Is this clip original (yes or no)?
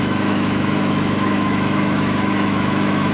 no